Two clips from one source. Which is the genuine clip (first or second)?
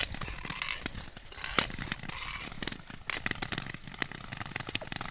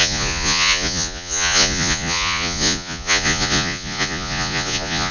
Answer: first